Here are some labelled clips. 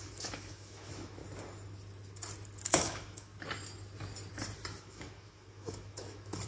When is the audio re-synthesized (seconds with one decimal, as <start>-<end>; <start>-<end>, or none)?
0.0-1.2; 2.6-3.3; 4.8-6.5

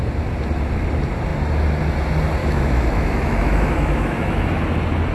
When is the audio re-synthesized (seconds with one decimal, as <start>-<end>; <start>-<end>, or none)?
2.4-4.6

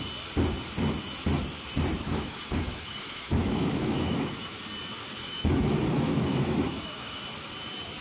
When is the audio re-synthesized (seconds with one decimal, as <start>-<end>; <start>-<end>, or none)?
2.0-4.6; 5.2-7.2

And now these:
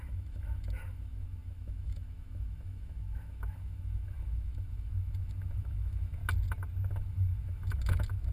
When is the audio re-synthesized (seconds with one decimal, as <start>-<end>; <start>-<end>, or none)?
0.0-6.2; 6.9-8.3